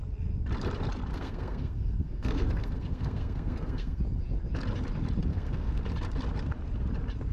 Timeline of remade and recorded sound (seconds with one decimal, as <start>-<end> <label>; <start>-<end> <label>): 0.0-1.1 recorded; 1.1-4.0 remade; 4.0-5.3 recorded; 5.3-5.8 remade; 5.8-7.3 recorded